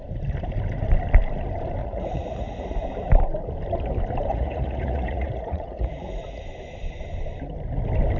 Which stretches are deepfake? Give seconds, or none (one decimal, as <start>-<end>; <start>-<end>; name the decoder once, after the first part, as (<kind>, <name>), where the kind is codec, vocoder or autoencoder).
1.8-2.7 (vocoder, Vocos); 4.3-6.4